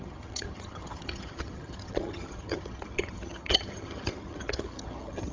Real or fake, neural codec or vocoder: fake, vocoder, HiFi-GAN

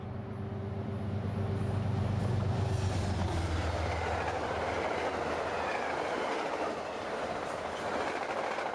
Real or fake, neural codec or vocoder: real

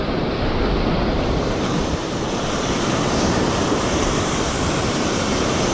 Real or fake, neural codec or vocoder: fake, vocoder, BigVGAN v2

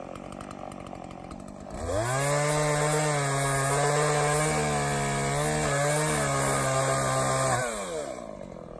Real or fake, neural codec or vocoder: real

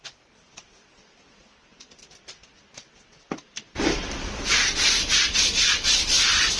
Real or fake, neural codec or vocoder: fake, vocoder, BigVGAN v2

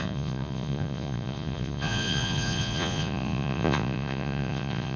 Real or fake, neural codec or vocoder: fake, vocoder, Vocos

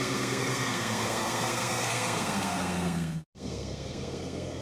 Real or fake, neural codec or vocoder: fake, codec, SNAC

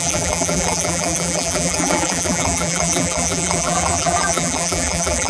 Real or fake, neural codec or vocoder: fake, vocoder, BigVGAN v2